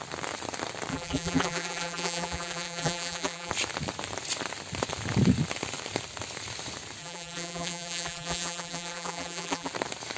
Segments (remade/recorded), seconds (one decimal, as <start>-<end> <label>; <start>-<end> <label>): 0.0-0.9 recorded; 0.9-3.5 remade; 3.5-7.0 recorded; 7.0-9.7 remade; 9.7-10.2 recorded